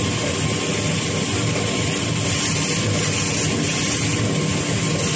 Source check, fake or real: real